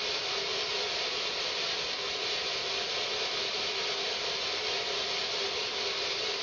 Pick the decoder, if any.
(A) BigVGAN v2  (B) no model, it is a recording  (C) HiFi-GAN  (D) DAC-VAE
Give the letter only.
B